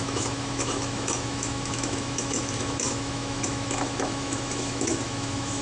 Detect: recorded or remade remade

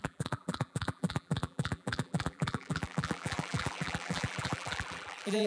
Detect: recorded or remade remade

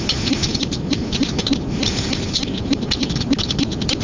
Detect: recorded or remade recorded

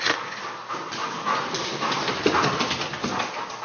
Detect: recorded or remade recorded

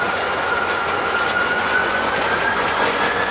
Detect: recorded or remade remade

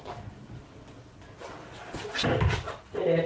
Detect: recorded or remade recorded